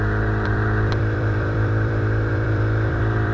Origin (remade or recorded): remade